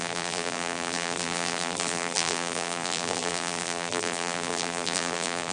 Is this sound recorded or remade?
remade